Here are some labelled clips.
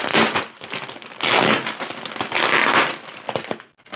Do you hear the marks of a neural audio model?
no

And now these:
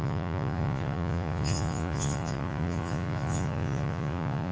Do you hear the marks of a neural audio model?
yes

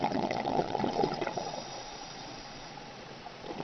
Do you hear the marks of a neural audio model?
yes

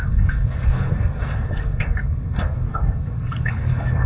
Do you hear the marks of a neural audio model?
yes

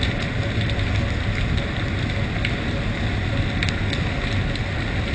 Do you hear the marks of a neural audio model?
no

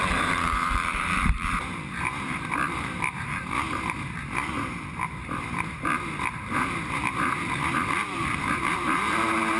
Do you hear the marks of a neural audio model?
yes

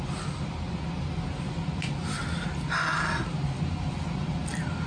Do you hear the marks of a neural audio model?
no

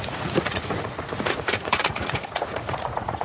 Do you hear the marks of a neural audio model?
yes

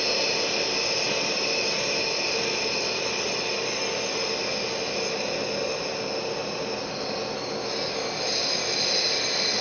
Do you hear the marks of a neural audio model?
no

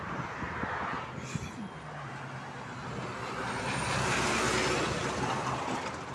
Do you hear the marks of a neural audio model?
no